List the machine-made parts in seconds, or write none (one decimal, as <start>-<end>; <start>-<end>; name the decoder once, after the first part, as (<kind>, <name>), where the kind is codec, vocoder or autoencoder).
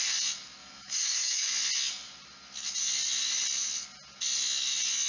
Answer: 0.6-1.5 (autoencoder, DAC-VAE)